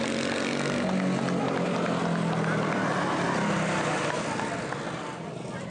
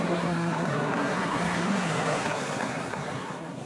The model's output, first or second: second